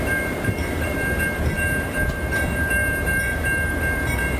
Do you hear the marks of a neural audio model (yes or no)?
yes